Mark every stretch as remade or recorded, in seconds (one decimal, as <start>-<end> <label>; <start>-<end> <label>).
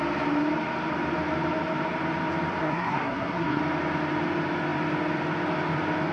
0.0-2.6 recorded; 2.6-3.6 remade; 3.6-6.1 recorded